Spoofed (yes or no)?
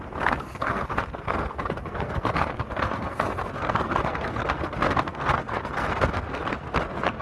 yes